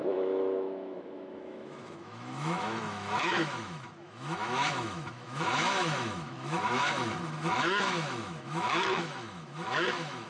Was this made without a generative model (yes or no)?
no